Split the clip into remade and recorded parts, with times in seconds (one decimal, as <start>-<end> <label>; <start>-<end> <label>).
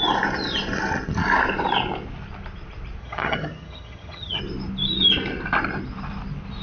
0.0-3.0 recorded; 3.0-4.4 remade; 4.4-6.6 recorded